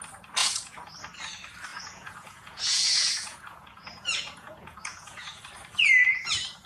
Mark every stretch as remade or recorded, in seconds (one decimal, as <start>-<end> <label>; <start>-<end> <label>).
0.0-0.4 recorded; 0.4-0.9 remade; 0.9-1.7 recorded; 1.7-5.4 remade; 5.4-6.7 recorded